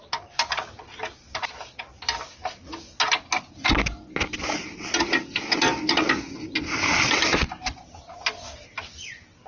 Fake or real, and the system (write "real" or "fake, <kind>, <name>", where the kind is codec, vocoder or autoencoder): real